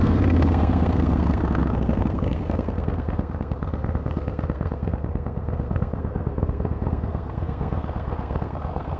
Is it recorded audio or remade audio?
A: remade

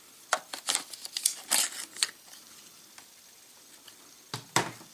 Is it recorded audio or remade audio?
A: recorded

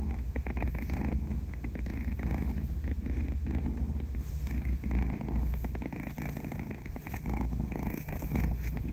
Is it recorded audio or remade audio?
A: remade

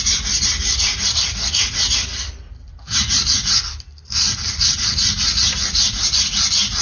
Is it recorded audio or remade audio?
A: recorded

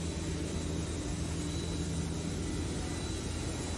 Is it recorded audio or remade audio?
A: recorded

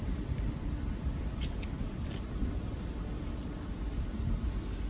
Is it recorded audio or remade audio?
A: recorded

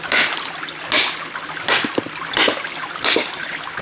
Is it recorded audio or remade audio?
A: recorded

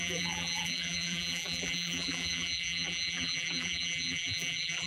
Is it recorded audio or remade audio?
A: remade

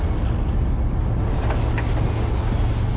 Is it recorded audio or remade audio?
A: recorded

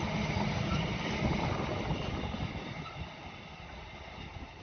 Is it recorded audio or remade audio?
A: recorded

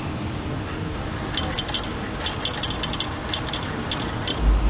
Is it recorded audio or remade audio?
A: recorded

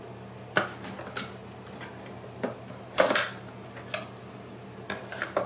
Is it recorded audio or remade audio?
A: recorded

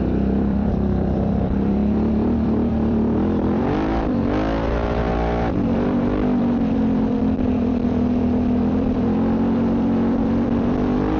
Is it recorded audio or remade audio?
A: remade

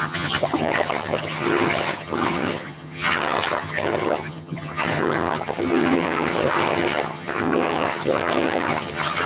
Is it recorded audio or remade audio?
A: remade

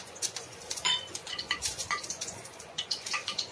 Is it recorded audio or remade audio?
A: remade